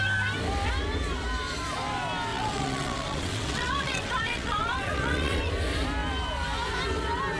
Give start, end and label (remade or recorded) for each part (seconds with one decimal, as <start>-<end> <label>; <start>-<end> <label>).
0.0-2.3 recorded; 2.3-5.5 remade; 5.5-7.4 recorded